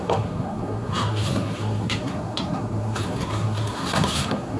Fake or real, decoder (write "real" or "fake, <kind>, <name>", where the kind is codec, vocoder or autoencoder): fake, codec, SNAC